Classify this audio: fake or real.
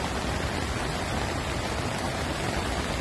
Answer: real